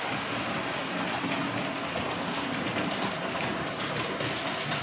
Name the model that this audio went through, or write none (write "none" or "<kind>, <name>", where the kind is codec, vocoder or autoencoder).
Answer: none